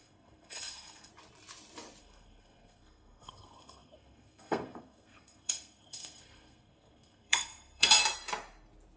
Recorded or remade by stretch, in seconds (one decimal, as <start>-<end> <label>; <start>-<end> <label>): 0.0-1.1 remade; 1.1-2.0 recorded; 2.0-8.0 remade; 8.0-9.0 recorded